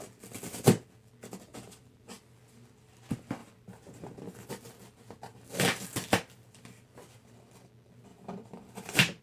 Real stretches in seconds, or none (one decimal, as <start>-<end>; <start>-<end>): 0.0-1.5; 2.1-3.4; 4.5-8.1